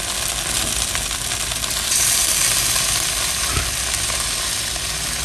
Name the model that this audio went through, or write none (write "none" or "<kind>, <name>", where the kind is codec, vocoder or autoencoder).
none